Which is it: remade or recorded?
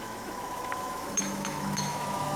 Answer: remade